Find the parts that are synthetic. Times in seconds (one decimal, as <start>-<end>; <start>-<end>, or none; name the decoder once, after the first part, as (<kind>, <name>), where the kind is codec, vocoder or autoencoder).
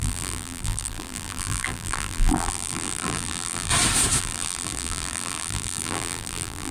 0.0-3.7 (vocoder, BigVGAN v2); 4.2-6.7